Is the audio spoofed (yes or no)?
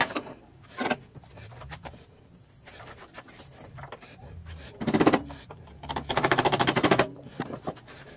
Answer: yes